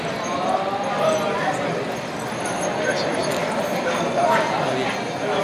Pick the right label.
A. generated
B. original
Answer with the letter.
B